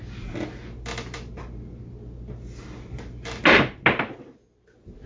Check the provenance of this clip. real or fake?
real